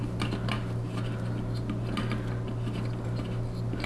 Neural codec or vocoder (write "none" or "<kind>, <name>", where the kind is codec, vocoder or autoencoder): none